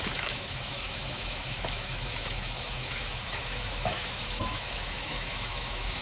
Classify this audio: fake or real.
fake